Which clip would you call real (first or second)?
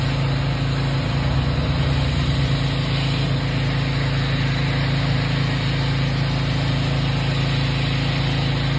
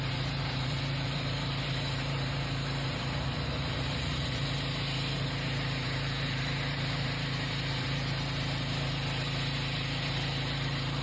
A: first